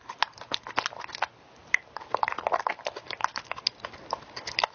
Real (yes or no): yes